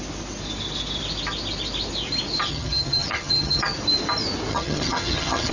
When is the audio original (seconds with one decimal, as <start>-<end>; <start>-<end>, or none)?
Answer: 0.0-2.5; 3.6-4.5